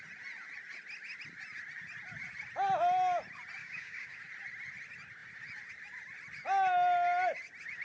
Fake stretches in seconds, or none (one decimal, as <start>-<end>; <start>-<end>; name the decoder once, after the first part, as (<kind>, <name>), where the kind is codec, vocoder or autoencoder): 3.6-4.2 (codec, DAC)